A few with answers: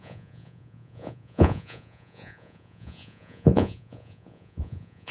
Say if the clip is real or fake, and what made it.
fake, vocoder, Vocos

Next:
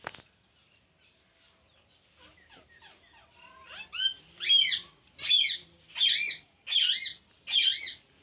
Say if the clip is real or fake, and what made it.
real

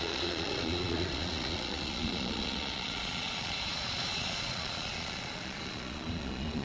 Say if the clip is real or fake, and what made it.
fake, vocoder, Vocos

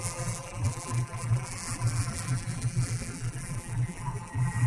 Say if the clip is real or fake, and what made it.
fake, vocoder, BigVGAN v2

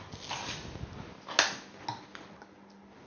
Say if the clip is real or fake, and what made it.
real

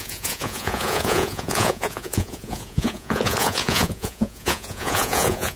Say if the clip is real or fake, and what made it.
fake, vocoder, Vocos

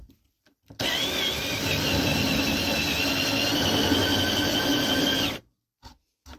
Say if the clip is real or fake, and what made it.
real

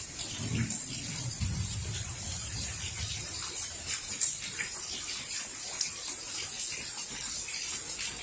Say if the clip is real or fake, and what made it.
real